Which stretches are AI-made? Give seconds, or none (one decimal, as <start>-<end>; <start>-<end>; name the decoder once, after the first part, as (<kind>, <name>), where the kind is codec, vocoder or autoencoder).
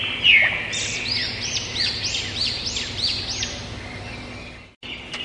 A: none